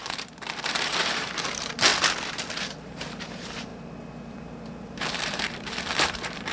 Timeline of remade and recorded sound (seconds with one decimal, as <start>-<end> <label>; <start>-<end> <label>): 0.0-1.9 remade; 1.9-2.6 recorded; 2.6-3.7 remade; 3.7-4.4 recorded; 4.4-6.5 remade